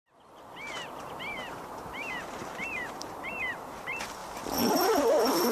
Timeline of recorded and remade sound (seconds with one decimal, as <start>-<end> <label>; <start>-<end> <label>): 0.0-4.2 remade; 4.2-4.7 recorded; 4.7-5.5 remade